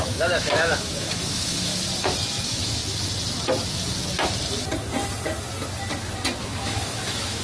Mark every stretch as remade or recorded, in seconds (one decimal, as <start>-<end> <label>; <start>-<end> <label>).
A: 0.0-1.7 remade; 1.7-2.4 recorded; 2.4-2.8 remade; 2.8-6.4 recorded; 6.4-7.4 remade